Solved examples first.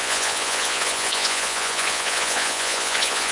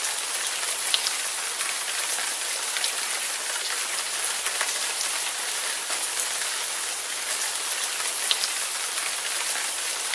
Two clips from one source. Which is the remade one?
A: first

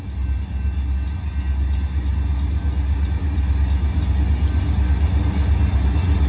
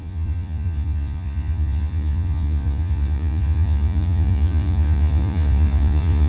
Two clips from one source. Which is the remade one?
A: second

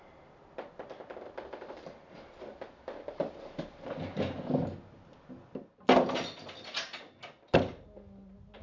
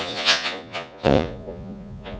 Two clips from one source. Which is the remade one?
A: second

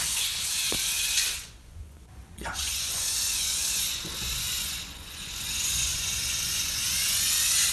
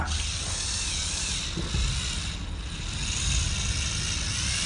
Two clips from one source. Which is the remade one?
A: first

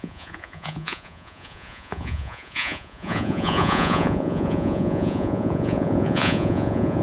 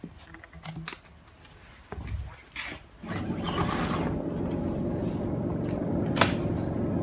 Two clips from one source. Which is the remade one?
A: first